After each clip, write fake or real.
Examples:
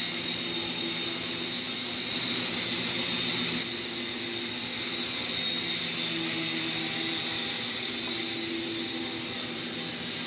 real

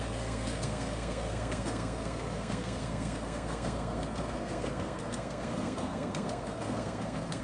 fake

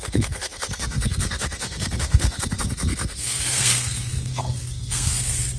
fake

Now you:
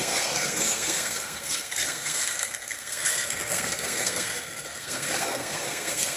fake